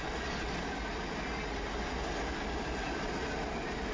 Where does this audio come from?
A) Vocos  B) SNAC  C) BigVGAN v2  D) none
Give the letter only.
D